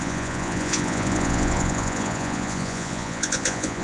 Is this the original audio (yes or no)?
no